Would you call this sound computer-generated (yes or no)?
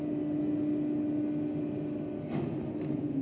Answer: no